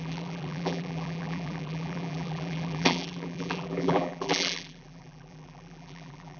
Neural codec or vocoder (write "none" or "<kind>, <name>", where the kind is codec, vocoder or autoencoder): vocoder, BigVGAN v2